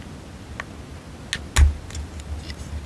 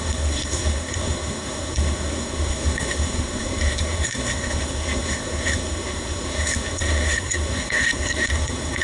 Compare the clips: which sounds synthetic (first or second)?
second